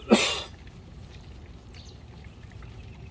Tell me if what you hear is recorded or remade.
recorded